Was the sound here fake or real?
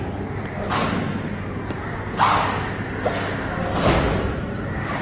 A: real